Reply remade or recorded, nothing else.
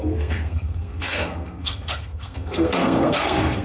remade